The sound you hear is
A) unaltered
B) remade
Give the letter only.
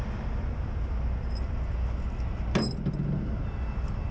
A